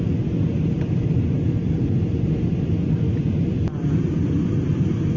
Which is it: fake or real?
real